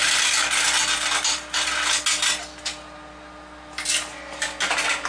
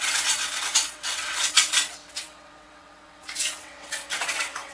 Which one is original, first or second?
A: first